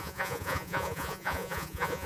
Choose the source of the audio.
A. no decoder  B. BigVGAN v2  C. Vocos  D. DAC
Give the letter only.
C